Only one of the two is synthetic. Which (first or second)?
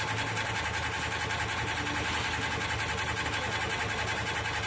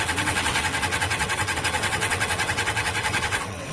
second